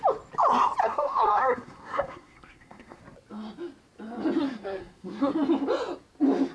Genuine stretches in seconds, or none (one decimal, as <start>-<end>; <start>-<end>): 0.0-0.8; 3.0-4.4; 5.3-6.5